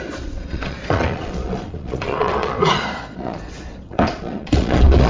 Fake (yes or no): yes